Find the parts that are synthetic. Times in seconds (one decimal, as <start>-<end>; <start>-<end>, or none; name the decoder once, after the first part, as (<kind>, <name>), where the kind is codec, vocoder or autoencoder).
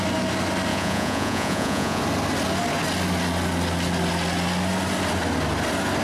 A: 0.7-2.0 (vocoder, Vocos)